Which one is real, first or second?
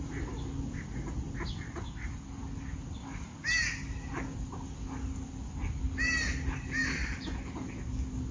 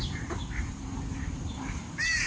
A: first